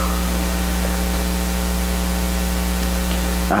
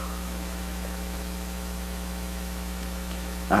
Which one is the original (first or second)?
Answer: first